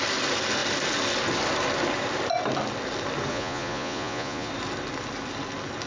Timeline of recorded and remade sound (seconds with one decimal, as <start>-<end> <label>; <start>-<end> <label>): 0.0-3.3 recorded; 3.3-4.5 remade; 4.5-5.9 recorded